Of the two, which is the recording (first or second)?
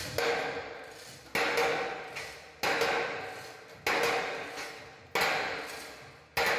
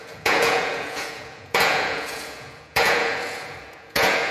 first